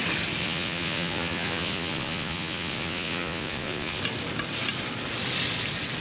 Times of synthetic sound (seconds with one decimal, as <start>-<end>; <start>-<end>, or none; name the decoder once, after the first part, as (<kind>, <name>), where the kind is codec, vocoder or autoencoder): 0.4-4.0 (vocoder, Vocos)